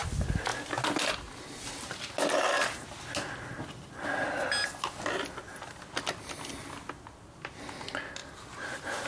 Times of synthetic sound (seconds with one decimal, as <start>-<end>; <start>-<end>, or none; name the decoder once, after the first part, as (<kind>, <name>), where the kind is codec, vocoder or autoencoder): 8.2-8.7 (vocoder, BigVGAN v2)